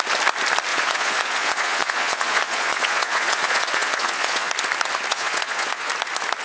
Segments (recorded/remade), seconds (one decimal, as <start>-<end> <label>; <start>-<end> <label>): 0.0-0.7 recorded; 0.7-4.5 remade; 4.5-5.1 recorded; 5.1-5.9 remade; 5.9-6.4 recorded